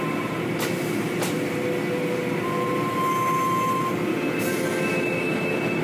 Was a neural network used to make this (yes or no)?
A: no